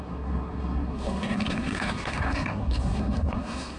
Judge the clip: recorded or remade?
remade